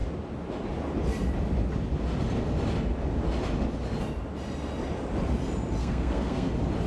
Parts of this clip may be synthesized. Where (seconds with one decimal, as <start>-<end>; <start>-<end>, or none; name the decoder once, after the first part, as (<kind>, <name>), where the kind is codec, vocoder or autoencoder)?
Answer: 5.8-6.5 (codec, SNAC)